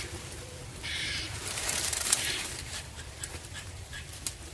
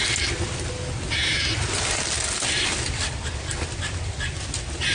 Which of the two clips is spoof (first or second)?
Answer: first